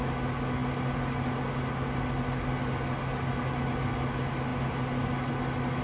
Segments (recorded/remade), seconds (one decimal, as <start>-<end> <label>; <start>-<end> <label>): 0.0-5.8 recorded